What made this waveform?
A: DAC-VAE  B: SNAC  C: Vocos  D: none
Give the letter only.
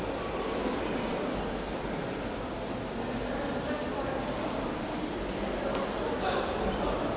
D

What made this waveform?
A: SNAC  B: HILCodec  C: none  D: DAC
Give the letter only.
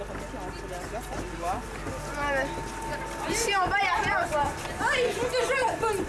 C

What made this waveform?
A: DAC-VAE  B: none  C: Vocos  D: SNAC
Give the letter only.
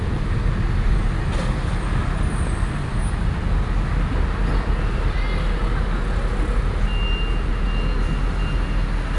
B